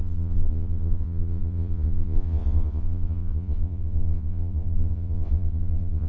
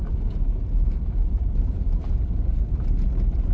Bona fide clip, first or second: second